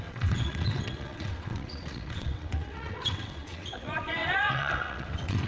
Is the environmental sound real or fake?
fake